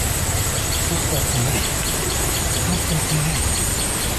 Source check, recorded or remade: recorded